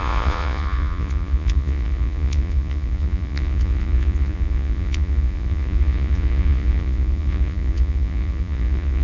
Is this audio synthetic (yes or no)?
yes